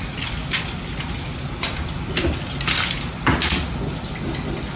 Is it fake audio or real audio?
real